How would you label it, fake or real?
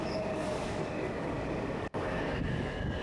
fake